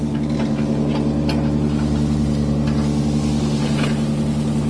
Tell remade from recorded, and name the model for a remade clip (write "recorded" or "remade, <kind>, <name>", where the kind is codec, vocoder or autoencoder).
recorded